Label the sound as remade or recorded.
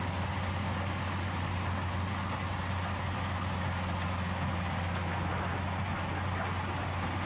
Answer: recorded